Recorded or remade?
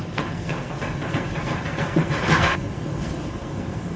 remade